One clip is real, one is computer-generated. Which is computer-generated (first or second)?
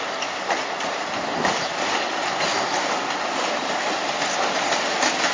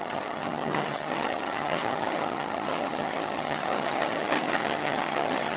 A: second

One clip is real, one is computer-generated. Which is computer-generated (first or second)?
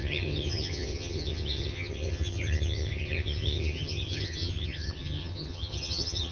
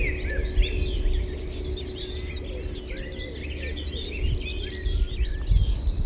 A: first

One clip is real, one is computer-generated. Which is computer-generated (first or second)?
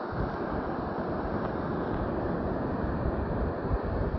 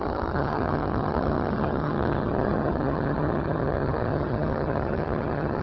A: second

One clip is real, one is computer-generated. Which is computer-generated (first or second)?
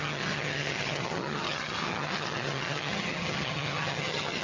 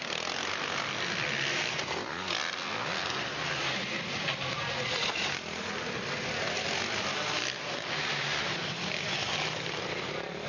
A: first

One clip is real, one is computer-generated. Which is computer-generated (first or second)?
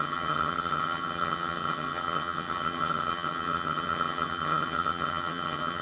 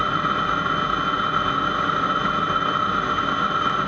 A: first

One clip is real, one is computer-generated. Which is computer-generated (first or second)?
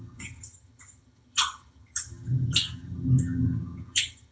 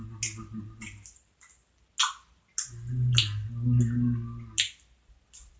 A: first